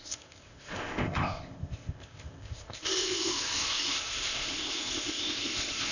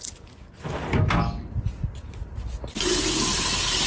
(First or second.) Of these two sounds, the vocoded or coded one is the first